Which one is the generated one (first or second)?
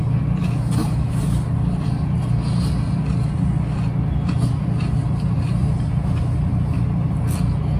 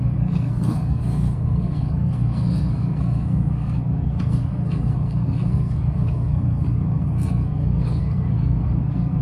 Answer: second